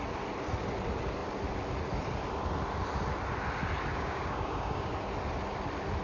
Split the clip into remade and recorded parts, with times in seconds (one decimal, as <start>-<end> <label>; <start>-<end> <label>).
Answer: 0.0-3.9 recorded; 3.9-4.9 remade; 4.9-6.0 recorded